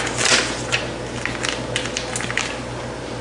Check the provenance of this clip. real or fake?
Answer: real